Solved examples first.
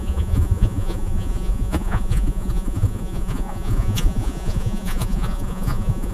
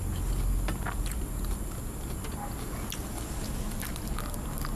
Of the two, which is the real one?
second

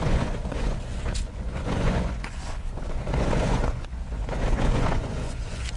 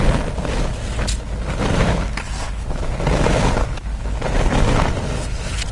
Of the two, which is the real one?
second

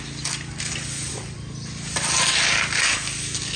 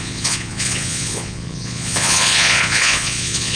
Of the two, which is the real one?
first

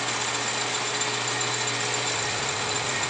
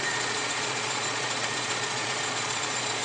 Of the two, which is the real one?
first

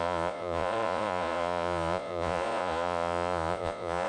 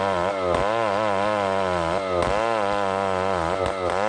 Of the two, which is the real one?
second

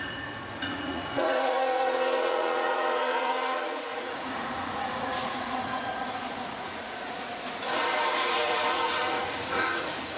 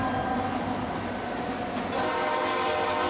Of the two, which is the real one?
second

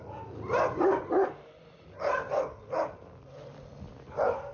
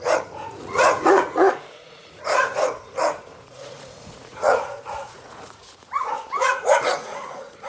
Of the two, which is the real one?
first